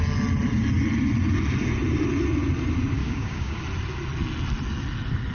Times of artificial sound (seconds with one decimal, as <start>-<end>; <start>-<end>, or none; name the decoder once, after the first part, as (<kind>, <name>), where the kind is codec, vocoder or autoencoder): 3.0-3.6 (codec, DAC)